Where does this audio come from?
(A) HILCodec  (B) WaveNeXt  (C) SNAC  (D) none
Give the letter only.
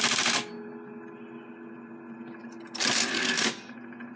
D